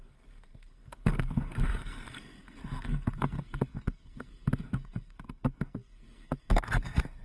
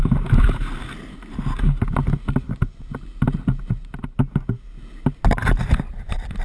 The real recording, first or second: second